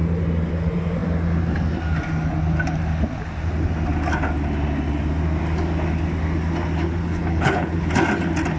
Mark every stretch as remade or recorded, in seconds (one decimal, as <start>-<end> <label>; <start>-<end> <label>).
0.0-7.0 recorded; 7.0-7.9 remade; 7.9-8.6 recorded